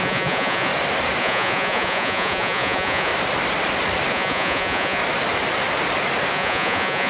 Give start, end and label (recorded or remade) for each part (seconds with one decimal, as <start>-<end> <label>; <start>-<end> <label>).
0.0-0.7 remade; 0.7-1.2 recorded; 1.2-3.1 remade; 3.1-4.1 recorded; 4.1-5.0 remade; 5.0-6.3 recorded; 6.3-7.1 remade